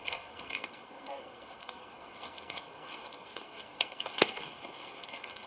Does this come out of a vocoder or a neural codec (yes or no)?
yes